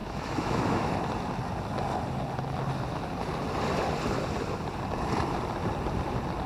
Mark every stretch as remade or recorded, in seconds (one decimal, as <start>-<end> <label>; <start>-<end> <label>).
0.0-0.9 remade; 0.9-6.5 recorded